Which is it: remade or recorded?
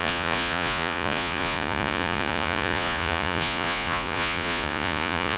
remade